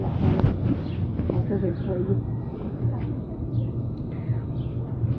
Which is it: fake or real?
real